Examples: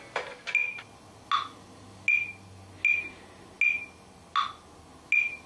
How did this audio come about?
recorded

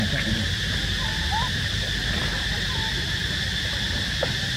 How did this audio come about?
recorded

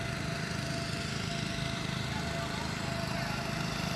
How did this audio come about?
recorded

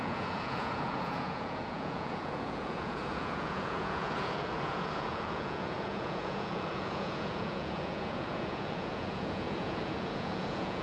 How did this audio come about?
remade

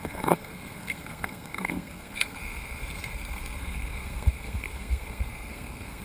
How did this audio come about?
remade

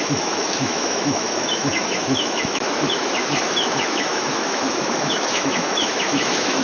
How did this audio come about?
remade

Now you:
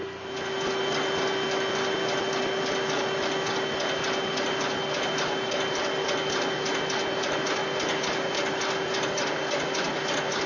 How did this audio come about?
recorded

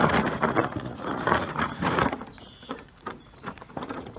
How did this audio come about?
remade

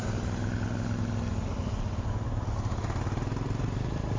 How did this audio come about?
recorded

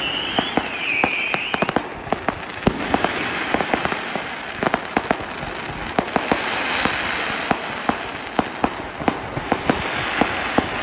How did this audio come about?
recorded